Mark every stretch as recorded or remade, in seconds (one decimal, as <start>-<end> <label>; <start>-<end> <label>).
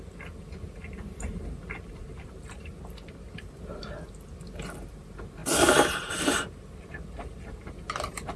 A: 0.0-2.7 remade; 2.7-3.4 recorded; 3.4-3.8 remade; 3.8-4.8 recorded; 4.8-8.4 remade